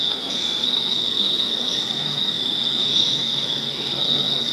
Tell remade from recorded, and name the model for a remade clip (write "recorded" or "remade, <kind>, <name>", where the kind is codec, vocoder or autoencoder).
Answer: remade, codec, SNAC